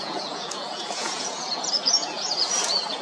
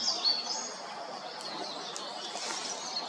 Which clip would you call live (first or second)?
second